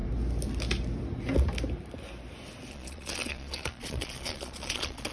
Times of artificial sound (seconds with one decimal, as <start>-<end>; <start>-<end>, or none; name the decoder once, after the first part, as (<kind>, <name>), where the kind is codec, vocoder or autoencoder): 2.7-5.1 (vocoder, Vocos)